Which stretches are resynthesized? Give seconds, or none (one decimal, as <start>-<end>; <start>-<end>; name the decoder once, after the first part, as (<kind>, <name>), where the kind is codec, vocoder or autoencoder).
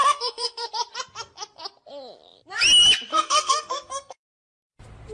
0.0-0.7 (codec, SNAC); 3.1-4.6